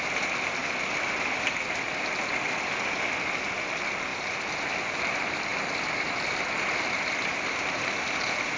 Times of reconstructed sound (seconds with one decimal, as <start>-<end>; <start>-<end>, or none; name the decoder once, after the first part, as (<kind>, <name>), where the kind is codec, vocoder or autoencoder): none